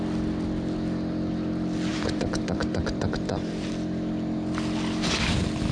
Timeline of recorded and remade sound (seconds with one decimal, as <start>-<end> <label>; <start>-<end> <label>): 0.0-1.9 recorded; 1.9-3.7 remade; 3.7-5.7 recorded